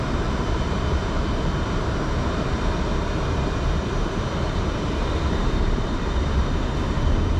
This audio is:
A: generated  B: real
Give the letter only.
A